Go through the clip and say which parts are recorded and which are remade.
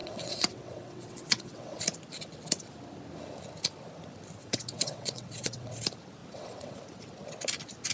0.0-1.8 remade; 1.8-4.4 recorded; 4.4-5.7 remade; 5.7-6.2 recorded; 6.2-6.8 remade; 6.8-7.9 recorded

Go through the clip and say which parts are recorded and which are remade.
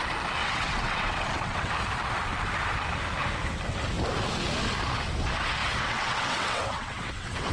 0.0-0.4 recorded; 0.4-1.7 remade; 1.7-5.6 recorded; 5.6-7.5 remade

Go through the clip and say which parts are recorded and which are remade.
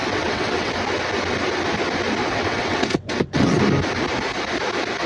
0.0-0.7 remade; 0.7-2.2 recorded; 2.2-3.6 remade; 3.6-5.1 recorded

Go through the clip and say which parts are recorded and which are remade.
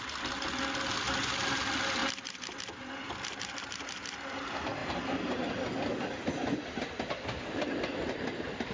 0.0-8.7 recorded